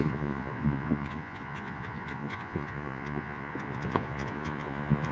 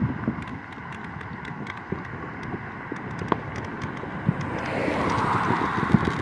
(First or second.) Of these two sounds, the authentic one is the second